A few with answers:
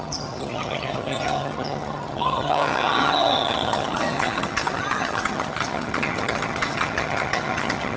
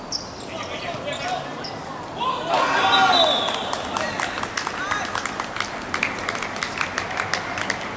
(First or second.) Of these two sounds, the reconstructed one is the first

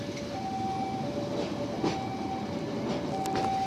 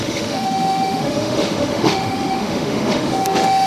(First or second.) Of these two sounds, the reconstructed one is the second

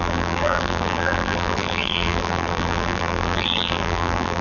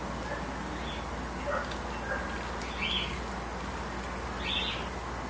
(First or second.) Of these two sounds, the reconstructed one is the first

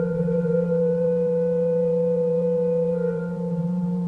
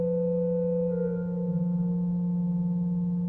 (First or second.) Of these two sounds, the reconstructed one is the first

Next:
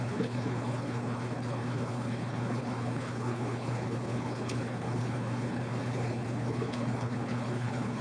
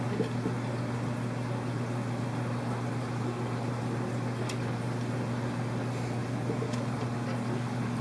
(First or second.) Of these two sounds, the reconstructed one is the first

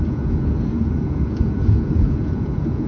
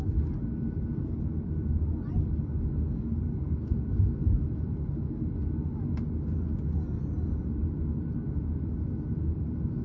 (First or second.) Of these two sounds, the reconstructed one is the first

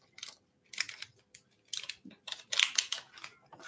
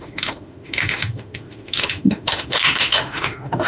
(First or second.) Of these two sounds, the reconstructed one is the second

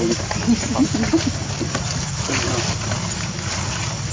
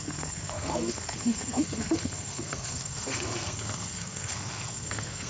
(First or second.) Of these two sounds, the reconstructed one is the second